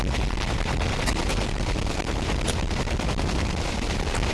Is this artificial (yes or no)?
yes